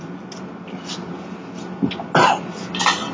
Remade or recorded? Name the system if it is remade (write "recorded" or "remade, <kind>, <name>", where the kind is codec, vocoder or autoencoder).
recorded